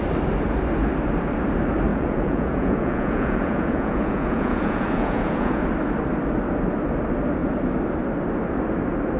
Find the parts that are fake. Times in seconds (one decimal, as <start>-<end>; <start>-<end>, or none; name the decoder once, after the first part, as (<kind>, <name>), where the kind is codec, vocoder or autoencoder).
1.9-5.6 (vocoder, Vocos)